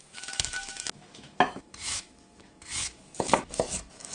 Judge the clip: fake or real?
fake